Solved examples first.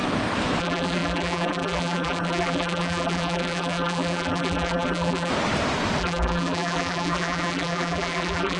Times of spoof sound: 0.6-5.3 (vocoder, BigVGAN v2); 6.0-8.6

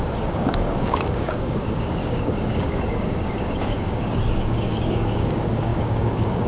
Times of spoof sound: 0.0-6.5 (codec, DAC)